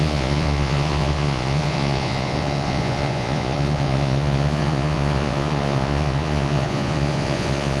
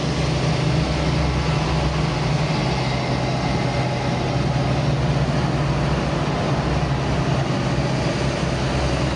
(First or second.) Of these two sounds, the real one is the second